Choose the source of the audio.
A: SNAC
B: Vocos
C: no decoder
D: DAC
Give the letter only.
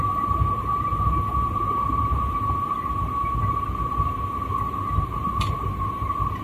C